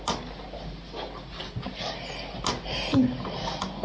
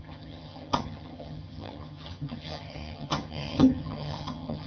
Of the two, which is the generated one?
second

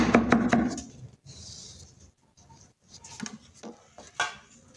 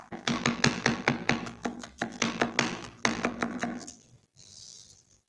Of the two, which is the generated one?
second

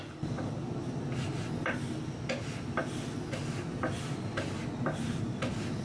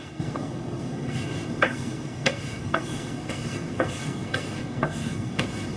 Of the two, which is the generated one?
second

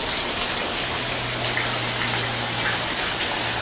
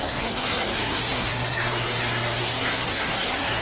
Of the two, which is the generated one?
second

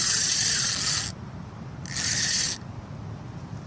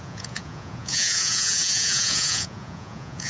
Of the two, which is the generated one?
second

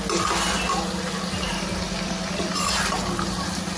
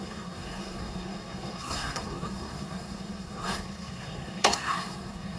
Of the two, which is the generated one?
second